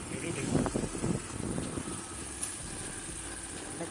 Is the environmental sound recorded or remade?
recorded